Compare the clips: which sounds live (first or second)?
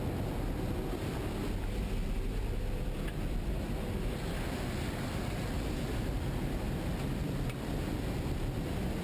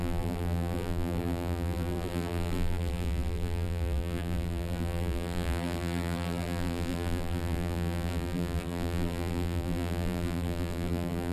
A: first